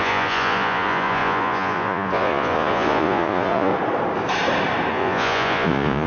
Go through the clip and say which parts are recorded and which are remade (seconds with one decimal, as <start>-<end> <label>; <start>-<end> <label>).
0.0-3.7 remade; 3.7-4.9 recorded; 4.9-6.1 remade